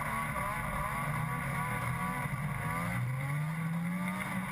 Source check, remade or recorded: recorded